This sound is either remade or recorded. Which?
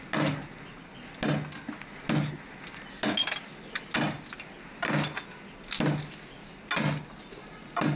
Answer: recorded